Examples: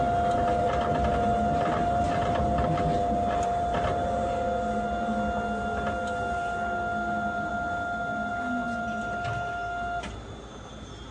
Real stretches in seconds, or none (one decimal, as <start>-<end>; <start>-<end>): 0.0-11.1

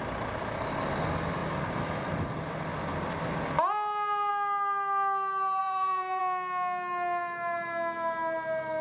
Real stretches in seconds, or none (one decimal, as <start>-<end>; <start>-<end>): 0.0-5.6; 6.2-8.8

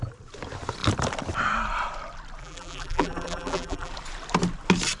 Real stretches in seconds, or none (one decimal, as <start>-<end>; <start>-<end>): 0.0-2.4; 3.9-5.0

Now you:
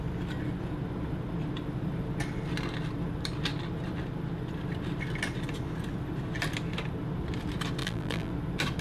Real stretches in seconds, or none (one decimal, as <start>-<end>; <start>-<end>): 0.0-7.8; 8.3-8.8

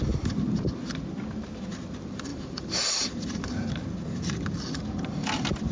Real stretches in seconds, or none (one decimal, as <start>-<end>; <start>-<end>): 0.0-2.3; 3.5-5.7

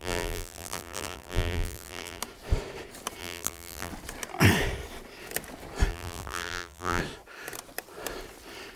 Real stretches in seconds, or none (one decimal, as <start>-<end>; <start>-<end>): 2.2-3.2; 3.9-5.9; 7.0-8.8